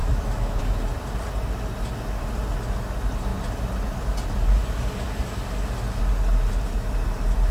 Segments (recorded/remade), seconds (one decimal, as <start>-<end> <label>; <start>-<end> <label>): 0.0-0.6 remade; 0.6-7.5 recorded